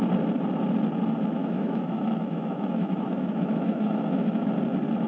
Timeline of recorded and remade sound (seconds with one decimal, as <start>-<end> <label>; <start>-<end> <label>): 0.0-1.4 recorded; 1.4-4.5 remade; 4.5-5.1 recorded